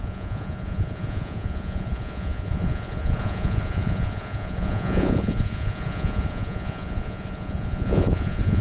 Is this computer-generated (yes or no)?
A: yes